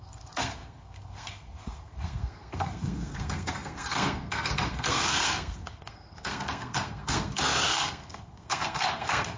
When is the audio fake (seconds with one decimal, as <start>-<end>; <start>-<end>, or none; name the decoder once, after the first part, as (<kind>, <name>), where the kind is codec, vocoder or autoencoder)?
0.0-9.4 (codec, SNAC)

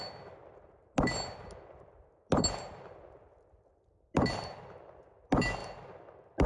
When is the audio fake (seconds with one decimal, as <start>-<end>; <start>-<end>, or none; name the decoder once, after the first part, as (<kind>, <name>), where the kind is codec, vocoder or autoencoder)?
none

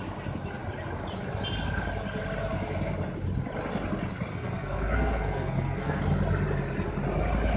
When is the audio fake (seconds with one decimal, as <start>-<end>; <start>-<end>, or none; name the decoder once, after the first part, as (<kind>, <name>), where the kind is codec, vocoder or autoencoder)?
4.3-6.0 (codec, SNAC)